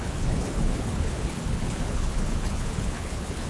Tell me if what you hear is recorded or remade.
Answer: remade